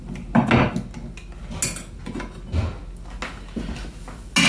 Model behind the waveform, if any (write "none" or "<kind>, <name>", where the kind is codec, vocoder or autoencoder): none